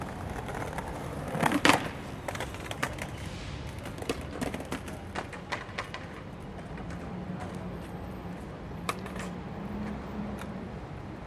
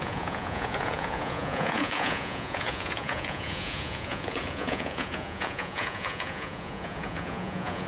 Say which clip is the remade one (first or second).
second